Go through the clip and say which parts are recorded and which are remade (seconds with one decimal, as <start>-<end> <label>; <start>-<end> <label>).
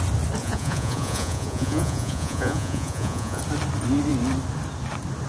0.0-0.4 recorded; 0.4-3.4 remade; 3.4-5.3 recorded